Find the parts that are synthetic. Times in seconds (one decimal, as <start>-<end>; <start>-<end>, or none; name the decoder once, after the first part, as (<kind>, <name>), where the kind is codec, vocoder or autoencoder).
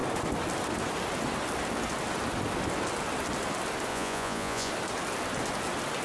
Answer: 3.9-4.7 (vocoder, Vocos)